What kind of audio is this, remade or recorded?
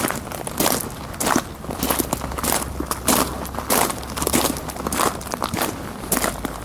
recorded